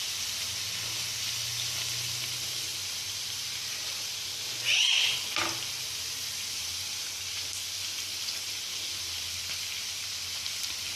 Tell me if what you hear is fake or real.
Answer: real